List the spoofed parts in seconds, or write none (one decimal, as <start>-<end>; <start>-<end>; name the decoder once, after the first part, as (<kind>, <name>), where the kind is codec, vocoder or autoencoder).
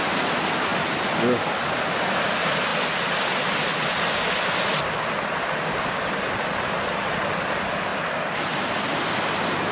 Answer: 0.0-2.7 (vocoder, BigVGAN v2); 5.7-7.9; 8.5-9.7